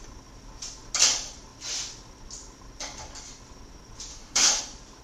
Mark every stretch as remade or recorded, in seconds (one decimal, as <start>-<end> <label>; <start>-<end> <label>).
0.0-4.1 recorded; 4.1-4.6 remade; 4.6-5.0 recorded